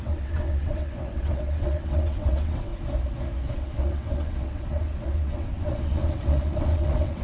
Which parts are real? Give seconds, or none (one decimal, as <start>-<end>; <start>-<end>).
2.7-3.5